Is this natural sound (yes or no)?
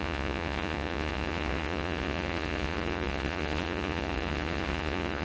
no